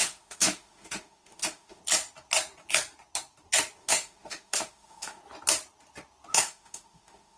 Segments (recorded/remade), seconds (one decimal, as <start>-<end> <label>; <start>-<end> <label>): 0.0-1.8 remade; 1.8-3.8 recorded; 3.8-5.2 remade; 5.2-6.3 recorded; 6.3-7.4 remade